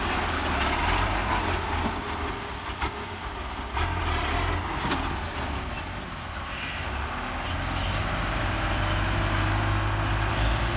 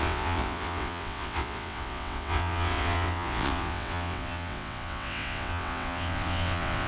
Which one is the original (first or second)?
first